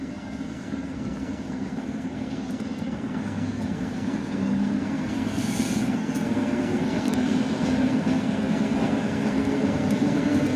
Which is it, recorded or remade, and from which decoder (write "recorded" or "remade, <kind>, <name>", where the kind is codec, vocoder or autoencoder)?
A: remade, codec, SNAC